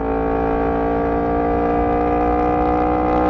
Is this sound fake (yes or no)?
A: no